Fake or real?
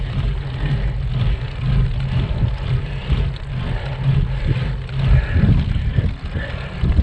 real